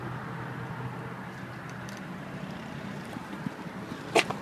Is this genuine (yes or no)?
yes